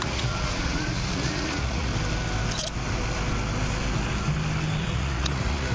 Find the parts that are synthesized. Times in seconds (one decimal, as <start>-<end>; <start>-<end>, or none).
0.0-1.9; 4.8-5.7